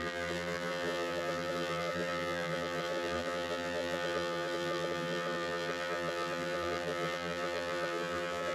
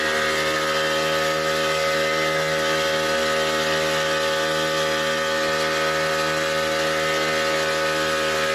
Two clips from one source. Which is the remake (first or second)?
first